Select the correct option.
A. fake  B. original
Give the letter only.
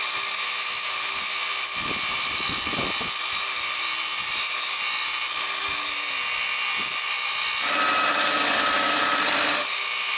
B